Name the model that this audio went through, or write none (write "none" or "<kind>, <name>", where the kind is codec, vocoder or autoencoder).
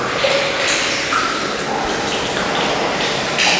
none